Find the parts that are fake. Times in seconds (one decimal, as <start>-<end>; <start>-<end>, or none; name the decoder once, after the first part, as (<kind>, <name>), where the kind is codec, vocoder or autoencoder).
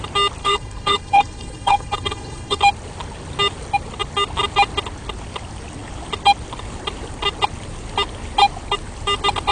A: 0.4-2.6 (codec, HILCodec)